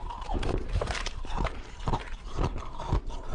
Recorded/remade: remade